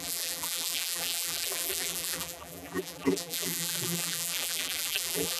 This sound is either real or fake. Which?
fake